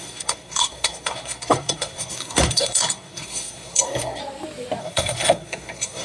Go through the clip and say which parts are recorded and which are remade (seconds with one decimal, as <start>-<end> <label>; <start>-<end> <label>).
0.0-4.2 remade; 4.2-4.8 recorded; 4.8-6.0 remade